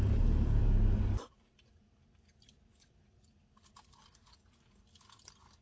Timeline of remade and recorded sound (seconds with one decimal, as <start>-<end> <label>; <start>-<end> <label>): 0.0-5.6 recorded